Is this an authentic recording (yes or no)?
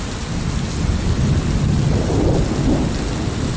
yes